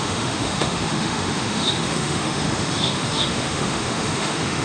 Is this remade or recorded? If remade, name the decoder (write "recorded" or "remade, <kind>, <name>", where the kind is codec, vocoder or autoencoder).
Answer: remade, autoencoder, DAC-VAE